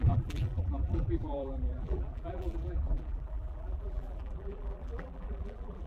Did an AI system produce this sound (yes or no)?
yes